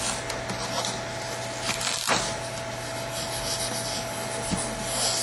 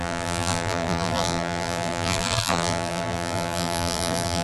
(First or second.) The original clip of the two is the first